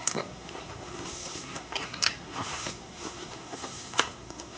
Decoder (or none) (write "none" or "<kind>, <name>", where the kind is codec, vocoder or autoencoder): codec, SNAC